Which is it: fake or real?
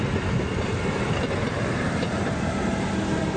fake